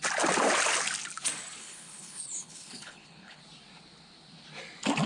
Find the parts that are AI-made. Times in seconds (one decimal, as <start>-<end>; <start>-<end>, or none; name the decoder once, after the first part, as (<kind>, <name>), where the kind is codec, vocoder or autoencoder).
1.6-3.4 (codec, HILCodec)

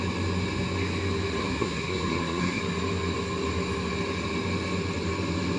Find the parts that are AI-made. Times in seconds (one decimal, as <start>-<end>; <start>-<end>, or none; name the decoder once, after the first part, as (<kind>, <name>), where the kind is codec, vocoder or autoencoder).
1.4-2.6 (codec, SNAC)

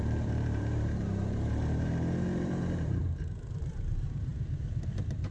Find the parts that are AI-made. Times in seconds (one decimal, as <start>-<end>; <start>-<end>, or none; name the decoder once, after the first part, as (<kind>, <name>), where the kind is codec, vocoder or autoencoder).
0.0-5.3 (vocoder, BigVGAN v2)

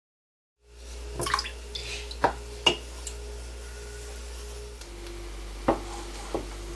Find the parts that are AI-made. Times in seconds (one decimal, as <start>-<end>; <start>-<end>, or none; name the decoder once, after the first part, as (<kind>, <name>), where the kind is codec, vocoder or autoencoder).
none

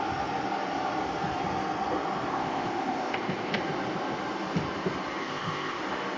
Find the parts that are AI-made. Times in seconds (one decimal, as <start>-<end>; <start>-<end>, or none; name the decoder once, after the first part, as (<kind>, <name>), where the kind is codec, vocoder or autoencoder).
2.3-3.6 (codec, ZipCodec); 5.2-5.8